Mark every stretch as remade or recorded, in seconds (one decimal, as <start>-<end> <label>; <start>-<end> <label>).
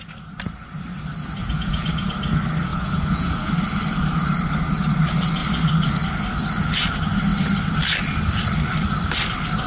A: 0.0-1.4 recorded; 1.4-2.1 remade; 2.1-2.7 recorded; 2.7-3.5 remade; 3.5-9.7 recorded